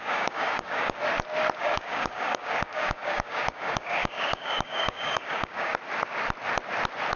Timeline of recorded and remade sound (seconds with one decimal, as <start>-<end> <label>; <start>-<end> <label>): 0.0-1.0 remade; 1.0-1.6 recorded; 1.6-5.7 remade; 5.7-7.2 recorded